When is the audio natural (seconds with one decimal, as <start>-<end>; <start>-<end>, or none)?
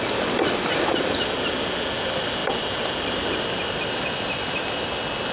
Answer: 0.0-5.3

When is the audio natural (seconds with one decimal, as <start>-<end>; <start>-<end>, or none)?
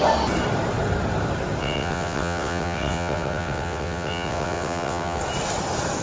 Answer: 0.0-1.6; 5.2-6.0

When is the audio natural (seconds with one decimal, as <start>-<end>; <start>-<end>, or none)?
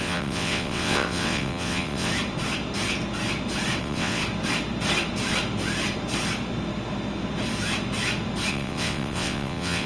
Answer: 2.1-3.8; 4.2-8.5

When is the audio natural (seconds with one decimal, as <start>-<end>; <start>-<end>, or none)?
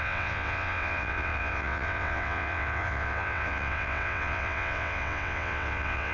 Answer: none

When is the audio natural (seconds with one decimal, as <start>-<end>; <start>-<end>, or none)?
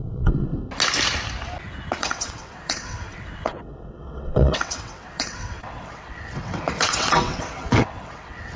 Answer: 0.5-2.0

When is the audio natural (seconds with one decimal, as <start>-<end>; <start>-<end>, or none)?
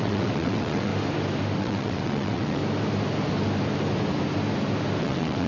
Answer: 0.9-1.6; 2.6-5.0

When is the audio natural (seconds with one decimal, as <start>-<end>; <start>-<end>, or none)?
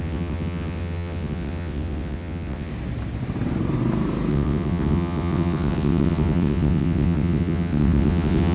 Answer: 2.7-4.3